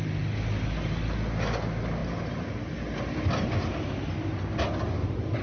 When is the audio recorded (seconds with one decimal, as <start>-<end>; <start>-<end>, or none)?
0.0-5.4